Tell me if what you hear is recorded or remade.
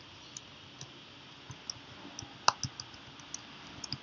recorded